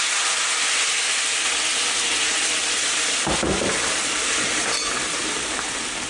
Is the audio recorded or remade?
recorded